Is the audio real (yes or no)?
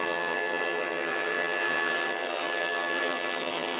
no